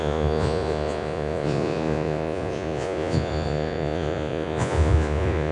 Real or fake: fake